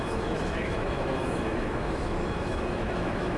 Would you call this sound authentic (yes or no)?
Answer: no